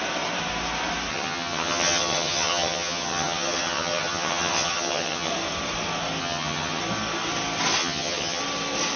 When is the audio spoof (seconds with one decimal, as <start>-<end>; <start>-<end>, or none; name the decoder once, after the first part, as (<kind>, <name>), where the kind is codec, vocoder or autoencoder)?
1.1-5.3 (vocoder, HiFi-GAN); 6.2-6.8; 7.8-8.4